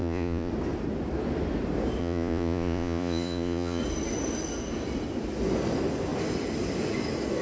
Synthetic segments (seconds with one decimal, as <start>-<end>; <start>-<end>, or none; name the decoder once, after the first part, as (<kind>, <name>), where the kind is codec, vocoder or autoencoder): 0.0-0.5 (vocoder, Vocos); 2.0-3.8